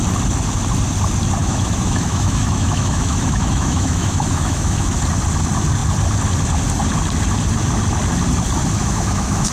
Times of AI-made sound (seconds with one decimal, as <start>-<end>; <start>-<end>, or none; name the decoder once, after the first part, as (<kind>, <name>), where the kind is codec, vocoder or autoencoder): 1.4-5.0 (autoencoder, DAC-VAE); 8.8-9.5